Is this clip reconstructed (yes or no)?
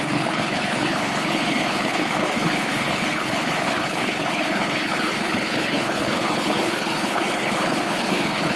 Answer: yes